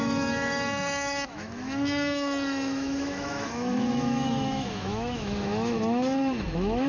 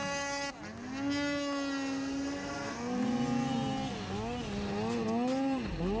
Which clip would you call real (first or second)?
second